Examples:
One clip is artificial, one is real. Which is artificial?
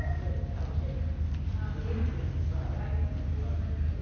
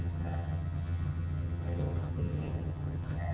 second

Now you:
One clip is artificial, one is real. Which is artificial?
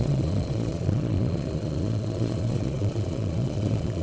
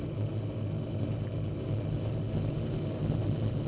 first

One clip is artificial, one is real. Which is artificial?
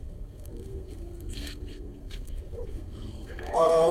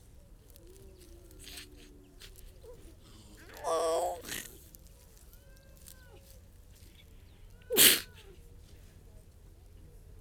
first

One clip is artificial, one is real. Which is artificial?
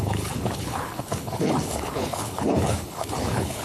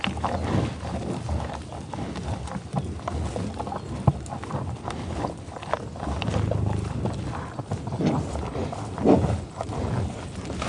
first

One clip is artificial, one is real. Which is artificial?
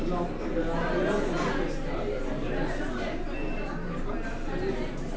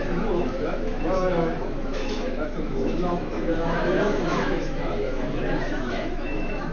second